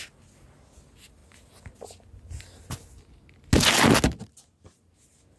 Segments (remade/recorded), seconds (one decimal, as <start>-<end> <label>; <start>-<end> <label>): 0.0-5.4 recorded